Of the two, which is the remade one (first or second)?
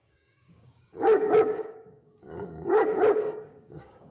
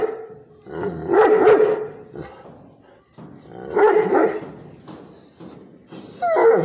first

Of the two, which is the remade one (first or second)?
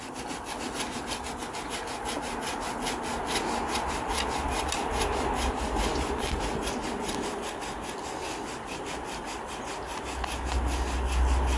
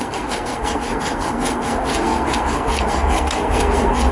second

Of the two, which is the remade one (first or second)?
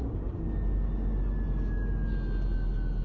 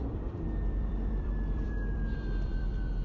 second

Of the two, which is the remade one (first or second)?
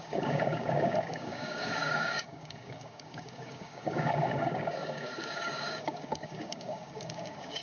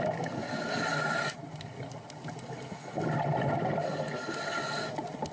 first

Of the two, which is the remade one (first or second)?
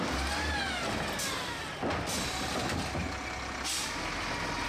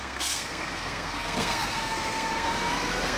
second